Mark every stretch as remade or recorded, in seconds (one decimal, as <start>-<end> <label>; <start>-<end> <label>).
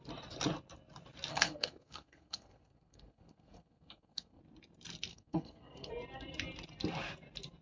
0.0-1.3 recorded; 1.3-4.4 remade; 4.4-5.1 recorded; 5.1-5.9 remade; 5.9-7.6 recorded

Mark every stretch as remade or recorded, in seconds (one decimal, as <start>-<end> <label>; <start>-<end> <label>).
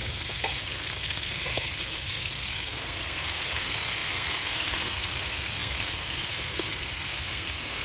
0.0-7.8 remade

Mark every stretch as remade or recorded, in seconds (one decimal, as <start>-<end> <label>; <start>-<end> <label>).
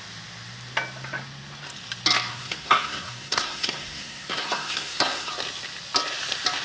0.0-2.3 recorded; 2.3-5.3 remade; 5.3-6.6 recorded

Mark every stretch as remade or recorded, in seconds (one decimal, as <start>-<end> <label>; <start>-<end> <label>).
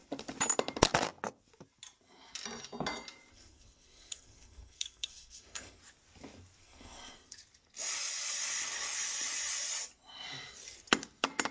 0.0-3.3 recorded; 3.3-5.8 remade; 5.8-6.6 recorded; 6.6-7.4 remade; 7.4-11.5 recorded